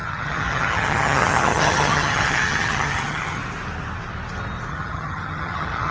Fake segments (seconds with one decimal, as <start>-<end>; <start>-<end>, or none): 0.0-3.4; 4.7-5.9